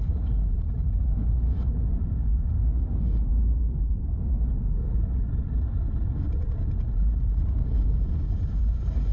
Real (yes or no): no